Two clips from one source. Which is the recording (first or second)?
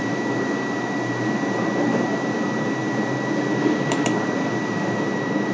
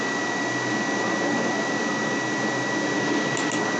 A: second